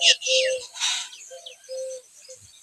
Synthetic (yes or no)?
no